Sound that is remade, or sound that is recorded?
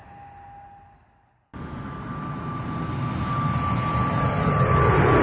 recorded